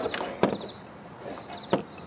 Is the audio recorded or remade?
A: recorded